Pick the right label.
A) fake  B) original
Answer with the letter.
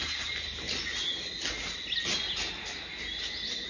B